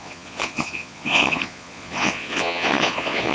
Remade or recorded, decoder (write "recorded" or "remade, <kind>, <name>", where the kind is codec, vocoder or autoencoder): remade, vocoder, Vocos